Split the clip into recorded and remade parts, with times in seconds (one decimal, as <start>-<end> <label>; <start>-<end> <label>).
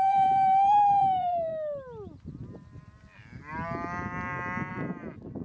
0.0-1.5 remade; 1.5-4.7 recorded; 4.7-5.4 remade